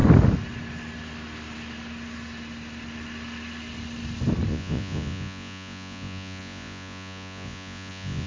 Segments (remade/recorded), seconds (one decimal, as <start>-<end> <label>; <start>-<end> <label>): 0.0-4.5 recorded; 4.5-8.3 remade